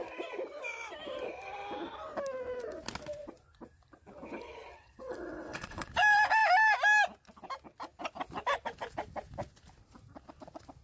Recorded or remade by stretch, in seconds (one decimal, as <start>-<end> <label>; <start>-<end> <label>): 0.0-4.7 recorded; 4.7-5.9 remade; 5.9-10.8 recorded